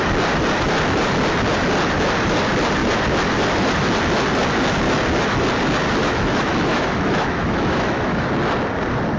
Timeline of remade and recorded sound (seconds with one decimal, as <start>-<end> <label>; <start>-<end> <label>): 0.0-6.0 recorded; 6.0-8.3 remade; 8.3-9.2 recorded